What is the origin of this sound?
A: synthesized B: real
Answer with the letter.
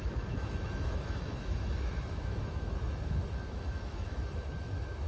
A